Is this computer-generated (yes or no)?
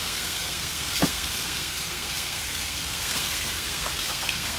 yes